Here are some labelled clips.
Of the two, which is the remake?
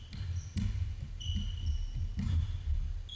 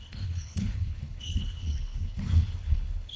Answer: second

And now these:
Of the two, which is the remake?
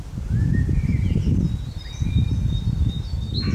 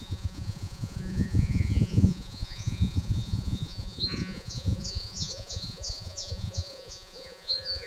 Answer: second